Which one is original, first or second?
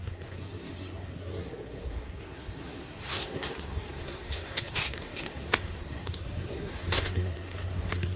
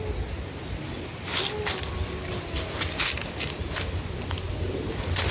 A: second